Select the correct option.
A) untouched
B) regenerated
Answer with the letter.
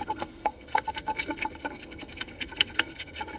B